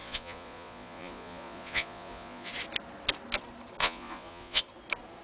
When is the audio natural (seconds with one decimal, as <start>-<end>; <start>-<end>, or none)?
2.5-3.8; 4.6-5.2